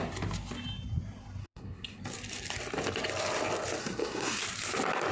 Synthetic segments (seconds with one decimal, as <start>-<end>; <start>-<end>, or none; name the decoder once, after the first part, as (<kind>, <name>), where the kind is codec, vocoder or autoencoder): 1.4-2.0 (codec, SNAC); 3.8-4.4